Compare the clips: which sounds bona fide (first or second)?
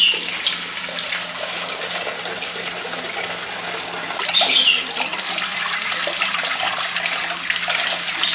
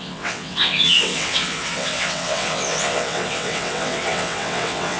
first